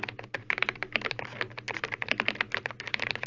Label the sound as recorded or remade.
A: recorded